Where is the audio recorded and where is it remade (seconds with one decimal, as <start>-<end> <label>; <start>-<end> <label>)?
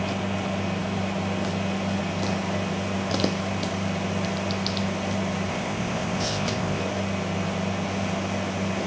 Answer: 0.0-5.5 recorded; 5.5-6.8 remade; 6.8-8.9 recorded